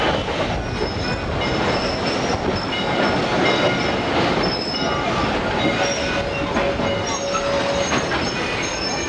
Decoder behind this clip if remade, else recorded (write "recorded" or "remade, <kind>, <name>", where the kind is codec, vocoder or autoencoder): recorded